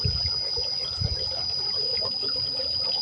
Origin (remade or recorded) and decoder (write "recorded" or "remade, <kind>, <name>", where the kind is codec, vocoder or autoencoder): recorded